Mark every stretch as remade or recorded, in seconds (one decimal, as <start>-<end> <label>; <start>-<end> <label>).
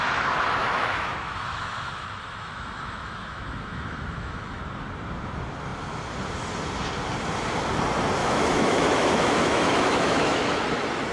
0.0-0.6 recorded; 0.6-4.6 remade; 4.6-8.2 recorded; 8.2-10.6 remade; 10.6-11.1 recorded